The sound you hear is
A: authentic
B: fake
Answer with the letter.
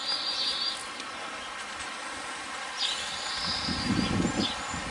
A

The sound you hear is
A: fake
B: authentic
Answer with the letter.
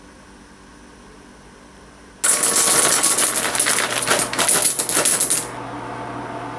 B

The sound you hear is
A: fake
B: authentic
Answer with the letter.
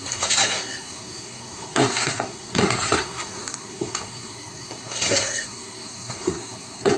A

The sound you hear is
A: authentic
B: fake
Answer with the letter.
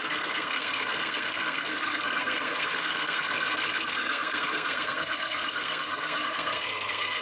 B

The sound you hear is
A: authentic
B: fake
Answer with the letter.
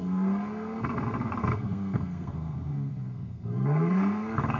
B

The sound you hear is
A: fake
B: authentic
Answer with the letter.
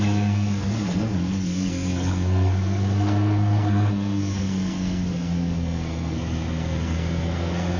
A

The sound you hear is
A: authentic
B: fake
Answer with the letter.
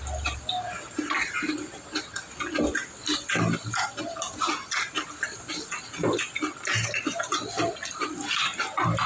A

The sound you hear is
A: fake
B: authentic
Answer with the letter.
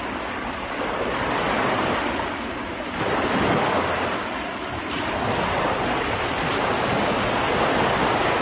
B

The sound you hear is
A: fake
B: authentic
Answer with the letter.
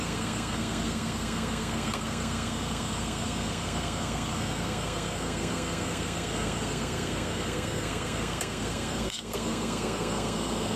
A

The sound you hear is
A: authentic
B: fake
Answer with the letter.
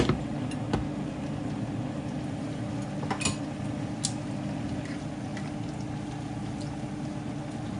A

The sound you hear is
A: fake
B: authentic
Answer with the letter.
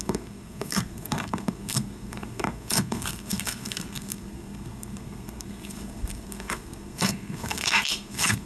A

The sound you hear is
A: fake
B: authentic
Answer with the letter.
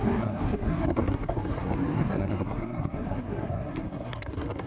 A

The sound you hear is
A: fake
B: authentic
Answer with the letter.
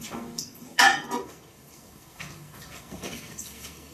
A